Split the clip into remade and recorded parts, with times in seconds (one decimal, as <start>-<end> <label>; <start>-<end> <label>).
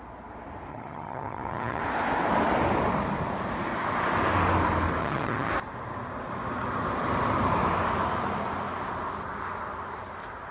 0.0-0.7 recorded; 0.7-1.8 remade; 1.8-5.0 recorded; 5.0-5.5 remade; 5.5-10.5 recorded